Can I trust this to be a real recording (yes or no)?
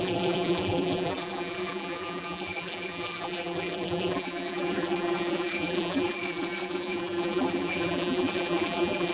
no